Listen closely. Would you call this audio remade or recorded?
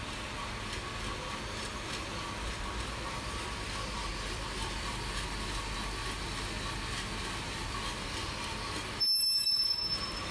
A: recorded